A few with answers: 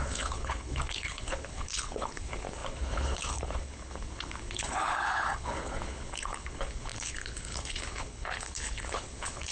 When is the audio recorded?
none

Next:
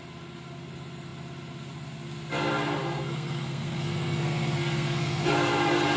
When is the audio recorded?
0.0-2.8; 5.5-6.0

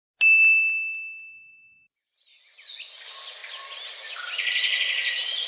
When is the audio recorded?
0.0-5.5

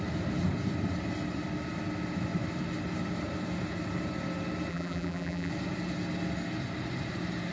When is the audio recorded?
0.0-4.7; 5.5-7.5

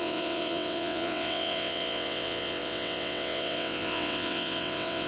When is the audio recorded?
none

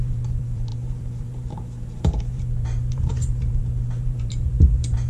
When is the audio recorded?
none

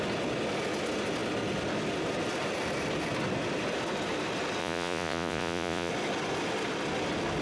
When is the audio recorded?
0.0-4.6; 5.9-7.4